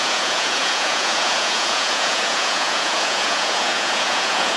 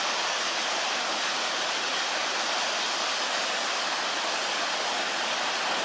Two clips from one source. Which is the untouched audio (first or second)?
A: second